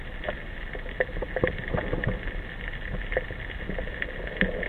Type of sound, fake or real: real